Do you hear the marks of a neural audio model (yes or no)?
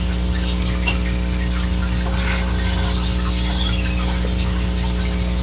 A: no